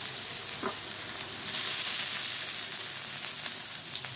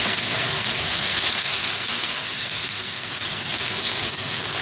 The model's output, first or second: second